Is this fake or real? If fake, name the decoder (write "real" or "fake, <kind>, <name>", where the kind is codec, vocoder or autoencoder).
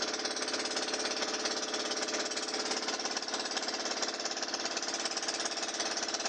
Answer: real